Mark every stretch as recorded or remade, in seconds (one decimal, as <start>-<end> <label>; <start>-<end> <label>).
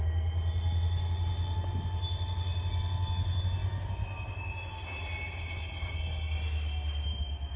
0.0-7.6 recorded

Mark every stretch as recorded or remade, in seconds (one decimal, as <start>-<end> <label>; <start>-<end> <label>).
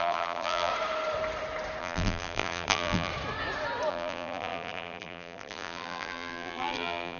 0.0-0.7 remade; 0.7-1.8 recorded; 1.8-3.1 remade; 3.1-3.9 recorded; 3.9-7.2 remade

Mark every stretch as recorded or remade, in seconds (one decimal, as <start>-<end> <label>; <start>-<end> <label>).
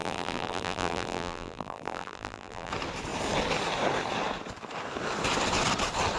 0.0-2.7 remade; 2.7-6.2 recorded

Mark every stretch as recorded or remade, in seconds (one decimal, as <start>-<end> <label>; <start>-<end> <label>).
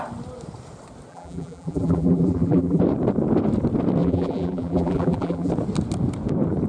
0.0-1.1 recorded; 1.1-2.8 remade; 2.8-4.0 recorded; 4.0-5.5 remade; 5.5-6.7 recorded